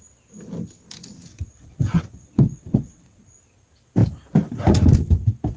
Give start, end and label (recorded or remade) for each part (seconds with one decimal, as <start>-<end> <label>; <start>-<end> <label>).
0.0-1.3 recorded; 1.3-3.2 remade; 3.2-5.6 recorded